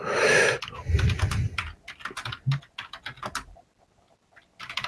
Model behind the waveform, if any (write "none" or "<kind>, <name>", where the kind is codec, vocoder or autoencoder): none